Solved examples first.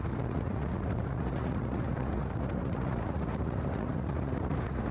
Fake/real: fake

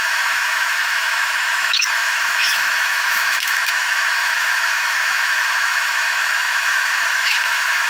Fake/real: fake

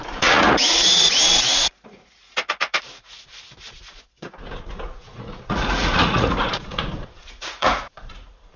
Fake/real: fake